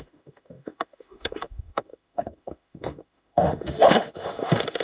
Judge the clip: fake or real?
fake